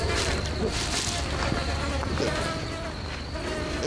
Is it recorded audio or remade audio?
recorded